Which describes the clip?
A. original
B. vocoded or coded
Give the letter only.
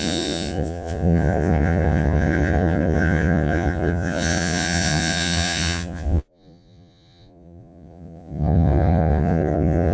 B